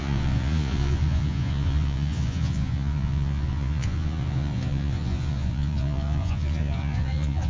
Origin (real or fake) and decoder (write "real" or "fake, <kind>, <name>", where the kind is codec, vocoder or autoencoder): fake, vocoder, Vocos